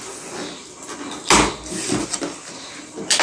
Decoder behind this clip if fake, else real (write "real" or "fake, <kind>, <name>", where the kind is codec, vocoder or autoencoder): real